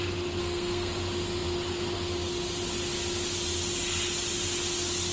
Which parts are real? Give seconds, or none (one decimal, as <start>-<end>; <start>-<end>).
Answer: 0.0-0.4; 0.9-5.1